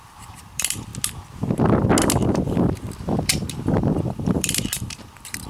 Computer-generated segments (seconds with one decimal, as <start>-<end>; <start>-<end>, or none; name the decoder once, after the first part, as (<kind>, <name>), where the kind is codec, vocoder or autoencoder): 0.0-0.9 (vocoder, BigVGAN v2); 3.0-5.5